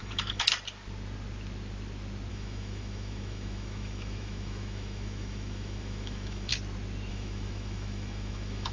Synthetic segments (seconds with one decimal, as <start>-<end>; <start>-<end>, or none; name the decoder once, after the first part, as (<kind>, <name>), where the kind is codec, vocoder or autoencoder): 0.0-0.5 (autoencoder, DAC-VAE); 2.3-6.5; 7.1-8.7